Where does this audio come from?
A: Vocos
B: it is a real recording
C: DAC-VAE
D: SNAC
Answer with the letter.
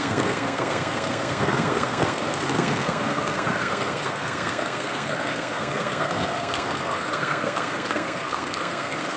D